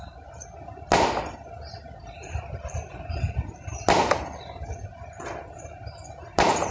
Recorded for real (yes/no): yes